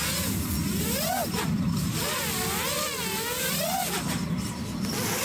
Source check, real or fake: real